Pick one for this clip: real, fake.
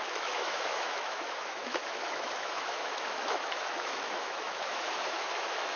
fake